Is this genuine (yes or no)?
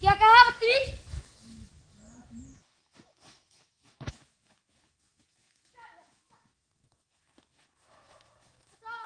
no